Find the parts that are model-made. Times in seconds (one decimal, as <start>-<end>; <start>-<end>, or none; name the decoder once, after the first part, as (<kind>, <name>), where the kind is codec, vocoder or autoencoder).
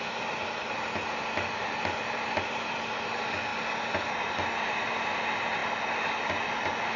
none